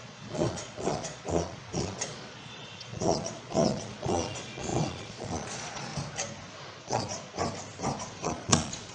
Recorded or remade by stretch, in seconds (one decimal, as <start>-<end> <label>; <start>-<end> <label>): 0.0-5.9 remade; 5.9-6.8 recorded; 6.8-7.3 remade; 7.3-8.2 recorded; 8.2-8.9 remade